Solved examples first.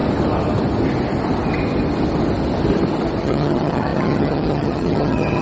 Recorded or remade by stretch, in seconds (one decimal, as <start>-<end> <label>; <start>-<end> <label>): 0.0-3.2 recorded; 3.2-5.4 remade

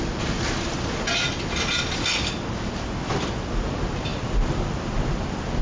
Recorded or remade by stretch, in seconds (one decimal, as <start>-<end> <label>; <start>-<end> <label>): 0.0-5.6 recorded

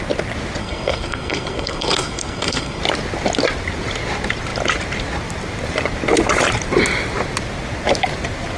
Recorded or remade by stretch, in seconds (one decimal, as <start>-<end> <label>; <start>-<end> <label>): 0.0-0.6 recorded; 0.6-2.8 remade; 2.8-8.6 recorded